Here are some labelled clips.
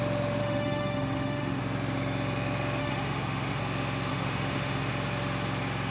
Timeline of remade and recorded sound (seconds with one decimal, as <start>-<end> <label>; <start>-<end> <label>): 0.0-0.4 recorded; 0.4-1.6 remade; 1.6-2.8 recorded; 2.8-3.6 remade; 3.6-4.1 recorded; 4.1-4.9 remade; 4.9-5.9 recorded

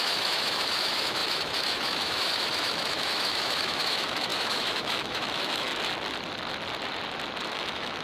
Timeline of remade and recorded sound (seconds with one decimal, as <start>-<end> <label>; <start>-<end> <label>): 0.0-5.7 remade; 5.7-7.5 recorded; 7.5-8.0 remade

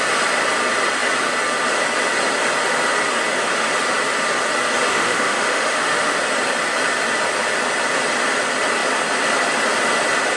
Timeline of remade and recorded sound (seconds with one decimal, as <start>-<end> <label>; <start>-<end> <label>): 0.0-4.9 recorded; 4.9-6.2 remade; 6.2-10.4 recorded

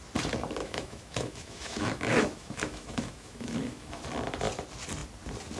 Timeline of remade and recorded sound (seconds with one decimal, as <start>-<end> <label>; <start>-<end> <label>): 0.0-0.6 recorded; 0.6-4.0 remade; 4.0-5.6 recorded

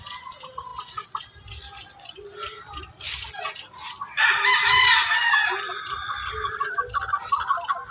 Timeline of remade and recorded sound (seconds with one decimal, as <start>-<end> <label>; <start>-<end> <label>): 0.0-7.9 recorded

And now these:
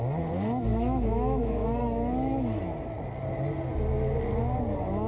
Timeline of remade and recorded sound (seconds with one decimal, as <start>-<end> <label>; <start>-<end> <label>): 0.0-0.7 recorded; 0.7-2.6 remade; 2.6-5.1 recorded